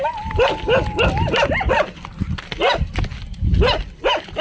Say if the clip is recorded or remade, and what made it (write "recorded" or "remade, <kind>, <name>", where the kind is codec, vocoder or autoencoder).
recorded